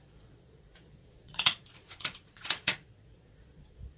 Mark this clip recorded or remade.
remade